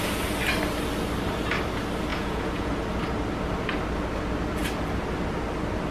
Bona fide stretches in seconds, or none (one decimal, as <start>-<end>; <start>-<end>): 0.0-2.1; 2.7-5.9